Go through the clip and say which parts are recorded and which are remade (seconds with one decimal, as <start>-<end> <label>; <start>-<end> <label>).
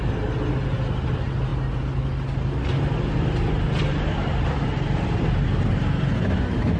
0.0-6.8 recorded